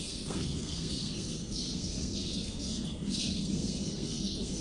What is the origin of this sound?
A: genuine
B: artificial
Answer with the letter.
B